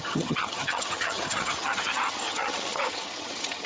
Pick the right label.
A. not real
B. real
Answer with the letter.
A